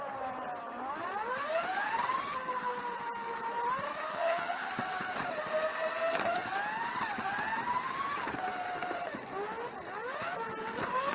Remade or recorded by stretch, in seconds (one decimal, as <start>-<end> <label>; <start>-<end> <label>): 0.0-4.1 recorded; 4.1-4.7 remade; 4.7-11.1 recorded